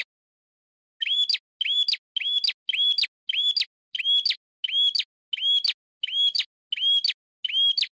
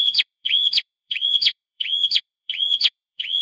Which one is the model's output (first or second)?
second